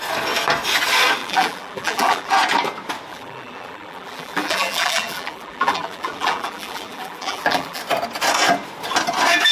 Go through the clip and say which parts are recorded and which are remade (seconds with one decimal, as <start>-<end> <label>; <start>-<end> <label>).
0.0-1.2 recorded; 1.2-2.3 remade; 2.3-3.1 recorded; 3.1-7.8 remade; 7.8-9.5 recorded